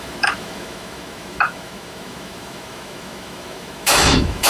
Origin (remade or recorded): remade